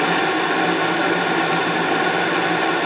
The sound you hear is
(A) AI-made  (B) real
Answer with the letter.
B